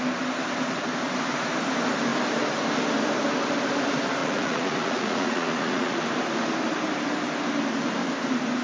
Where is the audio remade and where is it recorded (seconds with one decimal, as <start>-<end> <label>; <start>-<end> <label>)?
0.0-4.2 recorded; 4.2-6.0 remade; 6.0-8.6 recorded